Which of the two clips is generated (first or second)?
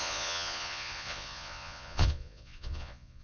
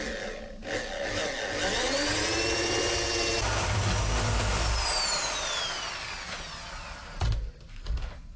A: first